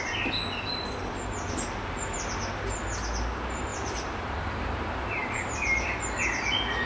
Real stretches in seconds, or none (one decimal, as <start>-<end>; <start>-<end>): 0.0-3.7; 6.0-6.9